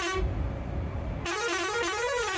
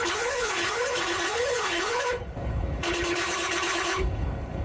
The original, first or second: first